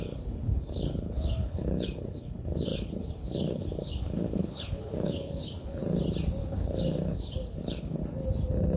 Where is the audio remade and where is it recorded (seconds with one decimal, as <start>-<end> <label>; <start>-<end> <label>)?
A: 0.0-5.8 remade; 5.8-6.4 recorded; 6.4-8.0 remade; 8.0-8.8 recorded